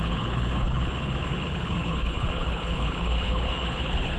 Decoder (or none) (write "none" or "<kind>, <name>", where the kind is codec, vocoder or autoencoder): codec, HILCodec